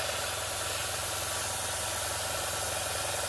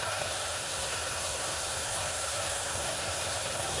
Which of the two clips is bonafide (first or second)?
first